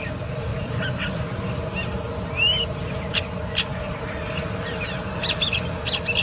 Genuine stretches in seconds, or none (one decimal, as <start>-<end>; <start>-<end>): 0.0-6.2